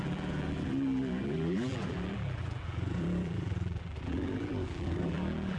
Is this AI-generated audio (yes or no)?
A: yes